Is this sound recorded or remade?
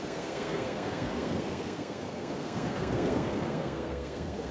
remade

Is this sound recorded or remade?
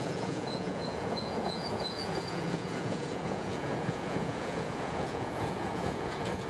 remade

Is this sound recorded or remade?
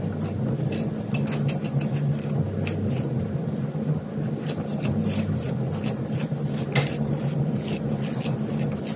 recorded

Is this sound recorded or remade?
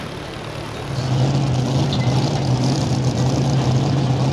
recorded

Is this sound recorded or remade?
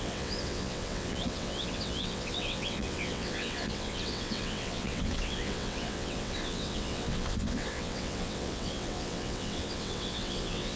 remade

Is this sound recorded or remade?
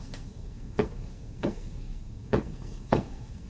remade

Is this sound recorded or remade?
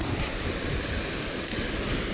recorded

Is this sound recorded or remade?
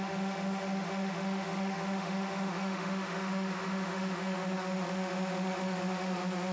remade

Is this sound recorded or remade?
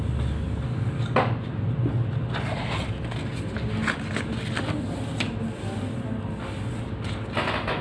recorded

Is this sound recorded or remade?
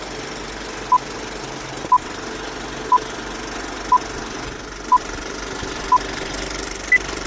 recorded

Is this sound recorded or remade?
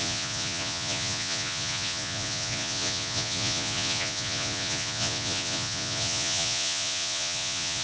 remade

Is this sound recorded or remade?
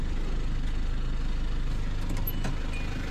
recorded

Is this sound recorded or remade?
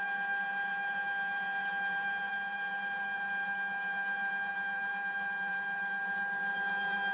remade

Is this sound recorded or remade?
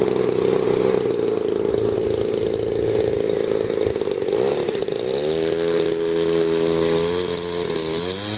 recorded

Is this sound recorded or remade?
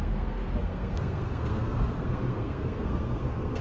remade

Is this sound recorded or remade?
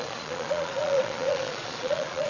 remade